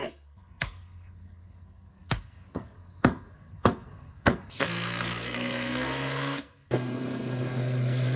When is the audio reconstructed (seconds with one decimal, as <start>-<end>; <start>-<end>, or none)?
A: 0.0-8.2